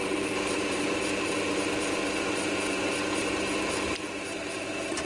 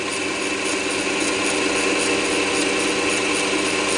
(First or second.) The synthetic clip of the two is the first